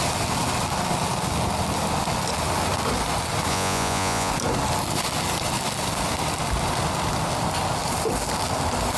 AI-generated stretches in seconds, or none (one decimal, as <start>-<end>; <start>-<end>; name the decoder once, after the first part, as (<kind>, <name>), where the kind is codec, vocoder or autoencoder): 3.5-4.3 (vocoder, Vocos)